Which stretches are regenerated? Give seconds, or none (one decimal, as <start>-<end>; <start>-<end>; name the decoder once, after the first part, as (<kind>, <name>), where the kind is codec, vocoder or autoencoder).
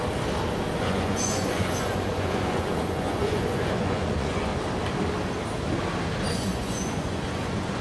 0.7-4.5 (vocoder, Vocos); 6.3-7.8